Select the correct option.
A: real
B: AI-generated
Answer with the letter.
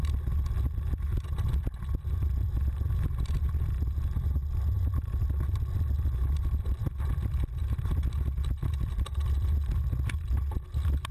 A